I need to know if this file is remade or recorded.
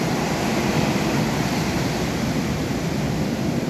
remade